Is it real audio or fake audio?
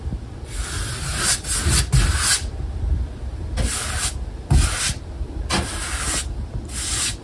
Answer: real